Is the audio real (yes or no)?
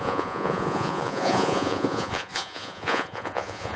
no